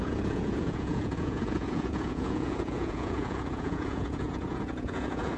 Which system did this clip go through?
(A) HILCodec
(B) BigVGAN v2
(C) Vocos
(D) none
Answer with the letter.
C